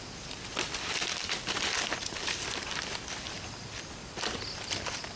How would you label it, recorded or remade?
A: recorded